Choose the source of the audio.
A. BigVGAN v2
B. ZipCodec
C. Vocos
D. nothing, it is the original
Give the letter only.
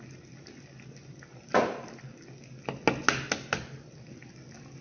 D